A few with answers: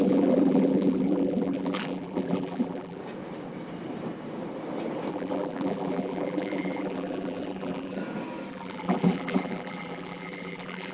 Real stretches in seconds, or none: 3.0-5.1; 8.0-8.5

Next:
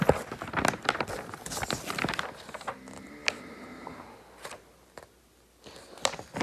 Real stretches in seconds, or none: 0.0-6.4

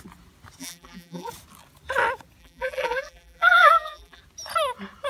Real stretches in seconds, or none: 0.0-0.6; 1.3-2.4; 4.2-5.1

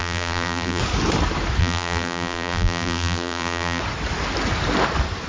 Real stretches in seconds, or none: 0.8-1.6; 3.8-5.3

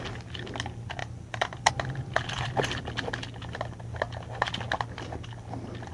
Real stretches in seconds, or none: 0.0-1.0; 1.7-5.9